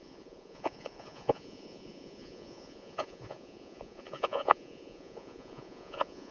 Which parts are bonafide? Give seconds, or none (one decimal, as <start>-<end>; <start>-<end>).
none